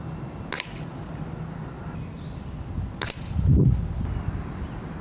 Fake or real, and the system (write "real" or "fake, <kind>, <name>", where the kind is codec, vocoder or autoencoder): real